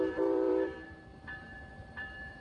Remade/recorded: remade